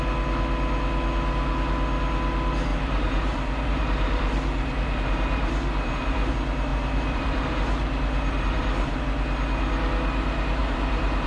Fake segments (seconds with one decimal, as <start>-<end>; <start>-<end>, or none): 2.7-6.3; 6.7-9.0; 10.6-11.3